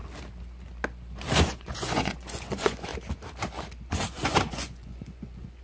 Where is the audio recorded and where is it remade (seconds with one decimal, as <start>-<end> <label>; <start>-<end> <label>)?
0.0-1.4 recorded; 1.4-2.9 remade; 2.9-3.9 recorded; 3.9-5.6 remade